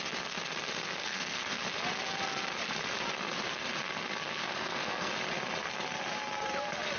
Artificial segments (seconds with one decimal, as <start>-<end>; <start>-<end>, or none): 1.0-1.6; 4.4-5.1